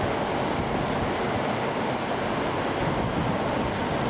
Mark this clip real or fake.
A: real